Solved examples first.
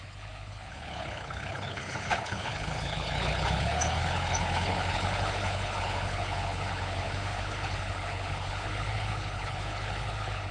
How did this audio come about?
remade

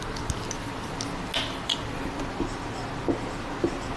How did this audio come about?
recorded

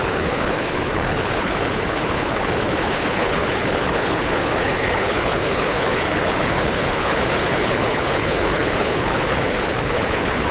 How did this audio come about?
remade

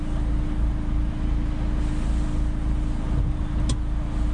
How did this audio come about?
recorded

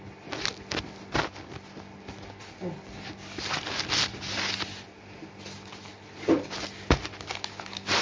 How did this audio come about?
recorded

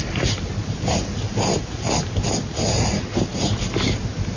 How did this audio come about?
recorded